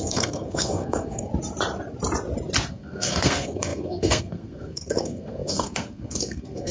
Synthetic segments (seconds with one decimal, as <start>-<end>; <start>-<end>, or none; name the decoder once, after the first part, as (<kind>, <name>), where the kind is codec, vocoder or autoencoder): 0.0-1.3 (codec, SNAC); 2.7-6.7